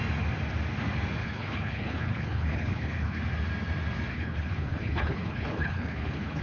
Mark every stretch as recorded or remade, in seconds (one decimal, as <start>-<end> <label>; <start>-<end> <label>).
0.0-1.2 recorded; 1.2-3.2 remade; 3.2-4.1 recorded; 4.1-6.4 remade